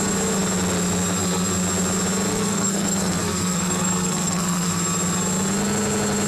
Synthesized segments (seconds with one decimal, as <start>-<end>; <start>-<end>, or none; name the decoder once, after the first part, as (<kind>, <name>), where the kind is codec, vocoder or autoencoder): 2.3-4.8 (codec, SNAC)